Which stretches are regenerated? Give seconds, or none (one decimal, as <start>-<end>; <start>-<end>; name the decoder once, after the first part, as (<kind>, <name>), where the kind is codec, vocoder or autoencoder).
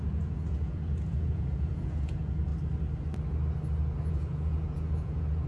0.0-2.5 (vocoder, Vocos); 4.0-5.5